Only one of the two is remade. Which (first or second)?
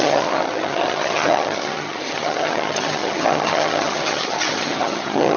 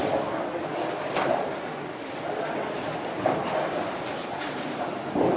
first